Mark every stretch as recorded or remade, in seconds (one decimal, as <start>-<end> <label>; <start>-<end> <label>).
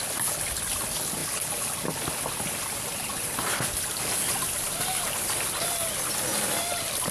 0.0-7.1 recorded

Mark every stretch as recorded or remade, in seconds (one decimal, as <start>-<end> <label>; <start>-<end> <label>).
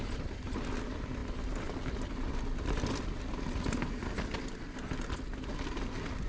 0.0-6.3 recorded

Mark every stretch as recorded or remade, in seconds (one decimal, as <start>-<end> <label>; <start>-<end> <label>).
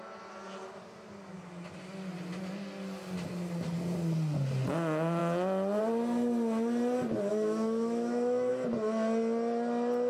0.0-7.3 recorded; 7.3-8.5 remade; 8.5-10.1 recorded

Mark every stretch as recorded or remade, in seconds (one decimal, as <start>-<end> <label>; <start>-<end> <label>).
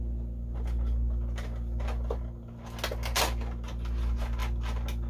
0.0-5.1 recorded